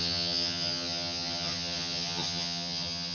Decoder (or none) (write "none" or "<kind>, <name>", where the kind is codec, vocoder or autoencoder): vocoder, HiFi-GAN